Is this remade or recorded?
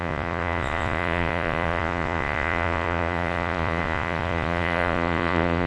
remade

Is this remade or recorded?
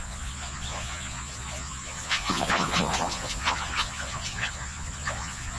remade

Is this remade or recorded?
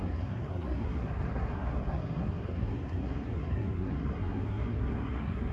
remade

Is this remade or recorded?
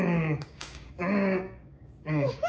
remade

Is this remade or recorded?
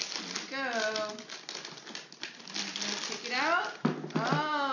recorded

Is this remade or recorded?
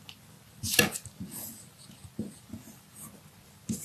recorded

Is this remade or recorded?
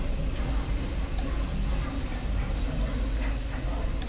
recorded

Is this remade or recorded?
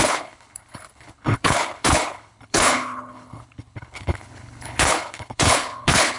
remade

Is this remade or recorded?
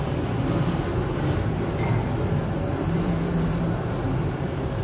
recorded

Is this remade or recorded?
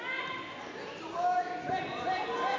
recorded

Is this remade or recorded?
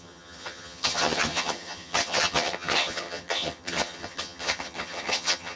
remade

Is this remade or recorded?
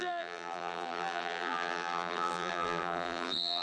remade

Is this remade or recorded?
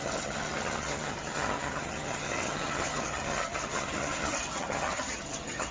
remade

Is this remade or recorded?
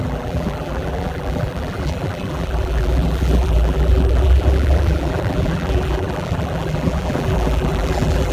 remade